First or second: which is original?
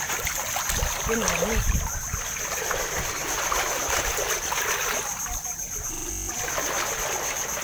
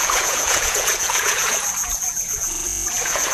first